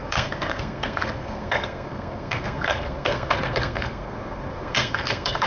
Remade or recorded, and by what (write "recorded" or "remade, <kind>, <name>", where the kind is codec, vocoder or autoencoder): remade, codec, SNAC